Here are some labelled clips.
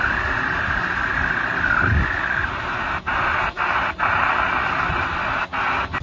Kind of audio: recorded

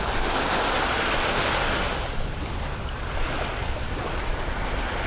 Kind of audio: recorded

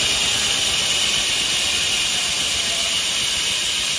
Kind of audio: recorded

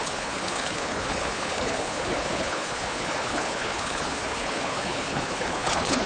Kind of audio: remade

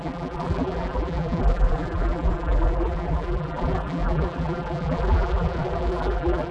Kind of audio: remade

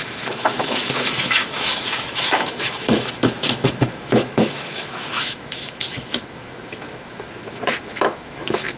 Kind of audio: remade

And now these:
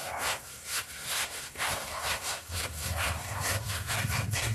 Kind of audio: remade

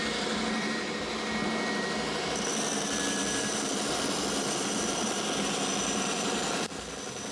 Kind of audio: recorded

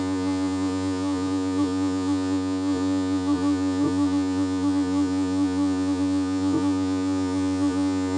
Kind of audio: remade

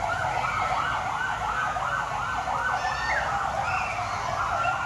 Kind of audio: recorded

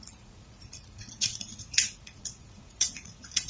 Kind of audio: remade